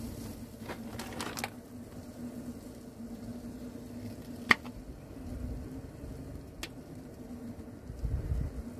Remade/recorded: recorded